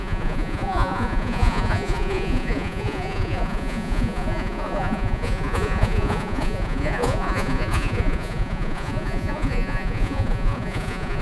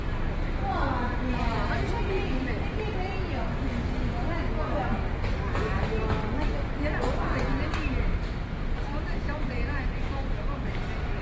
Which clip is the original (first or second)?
second